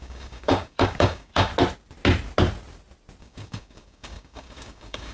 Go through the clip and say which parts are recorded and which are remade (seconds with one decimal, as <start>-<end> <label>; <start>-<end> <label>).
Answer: 0.0-1.5 remade; 1.5-3.2 recorded; 3.2-5.1 remade